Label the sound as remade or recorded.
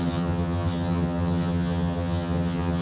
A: remade